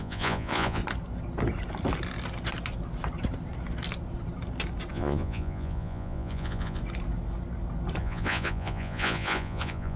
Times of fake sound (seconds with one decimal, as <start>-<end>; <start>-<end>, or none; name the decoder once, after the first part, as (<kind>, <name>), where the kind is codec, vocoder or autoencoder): 0.0-0.8 (vocoder, Vocos); 4.9-6.8; 8.0-10.0